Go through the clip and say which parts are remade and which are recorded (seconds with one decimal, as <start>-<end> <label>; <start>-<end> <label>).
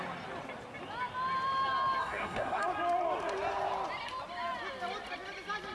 0.0-2.0 recorded; 2.0-2.6 remade; 2.6-5.7 recorded